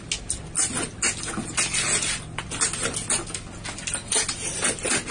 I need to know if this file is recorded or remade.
recorded